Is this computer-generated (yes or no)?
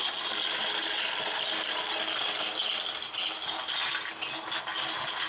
no